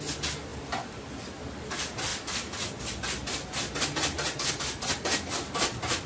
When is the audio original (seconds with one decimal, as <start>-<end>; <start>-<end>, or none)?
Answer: 0.0-6.1